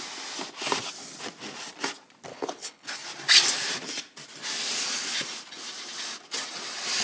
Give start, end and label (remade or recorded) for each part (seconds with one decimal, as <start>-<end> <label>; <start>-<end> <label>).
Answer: 0.0-2.3 recorded; 2.3-2.9 remade; 2.9-7.0 recorded